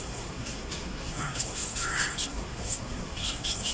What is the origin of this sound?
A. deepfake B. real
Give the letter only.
A